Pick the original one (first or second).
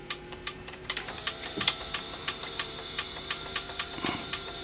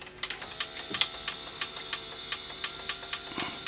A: second